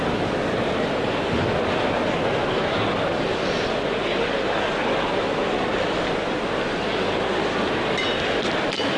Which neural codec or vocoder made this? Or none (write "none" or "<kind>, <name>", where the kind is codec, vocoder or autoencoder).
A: none